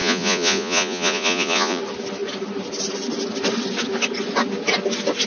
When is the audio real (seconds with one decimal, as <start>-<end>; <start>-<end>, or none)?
1.8-5.3